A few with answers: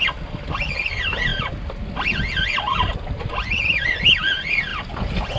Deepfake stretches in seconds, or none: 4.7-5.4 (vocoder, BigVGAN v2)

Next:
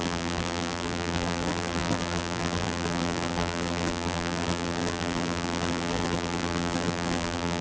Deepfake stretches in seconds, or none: 0.0-7.6 (vocoder, BigVGAN v2)

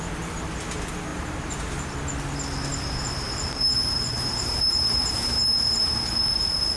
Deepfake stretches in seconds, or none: 1.1-1.8 (vocoder, BigVGAN v2); 2.7-6.1

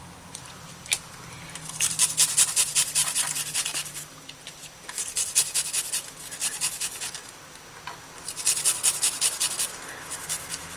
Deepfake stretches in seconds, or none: 0.0-2.0 (vocoder, BigVGAN v2); 6.4-7.1

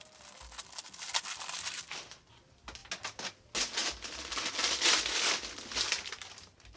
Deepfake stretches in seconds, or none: none

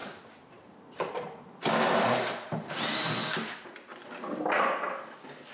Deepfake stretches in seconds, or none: 0.0-3.1 (vocoder, BigVGAN v2); 3.9-4.5